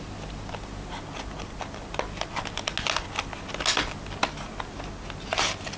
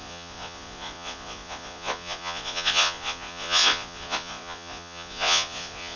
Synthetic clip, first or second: second